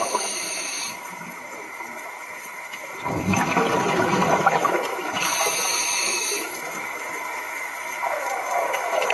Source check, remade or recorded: remade